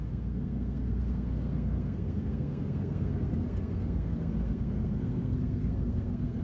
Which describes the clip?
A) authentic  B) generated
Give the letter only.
B